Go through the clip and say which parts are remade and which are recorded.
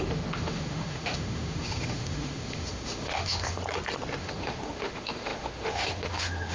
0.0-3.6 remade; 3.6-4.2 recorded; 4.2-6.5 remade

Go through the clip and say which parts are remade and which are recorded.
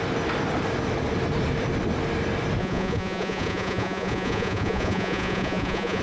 0.0-2.6 recorded; 2.6-6.0 remade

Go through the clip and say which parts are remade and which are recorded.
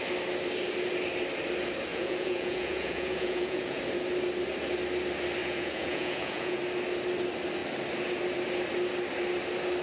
0.0-1.9 recorded; 1.9-3.8 remade; 3.8-5.4 recorded; 5.4-6.6 remade; 6.6-9.8 recorded